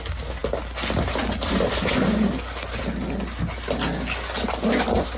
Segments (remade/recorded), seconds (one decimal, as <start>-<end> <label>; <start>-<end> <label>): 0.0-5.2 recorded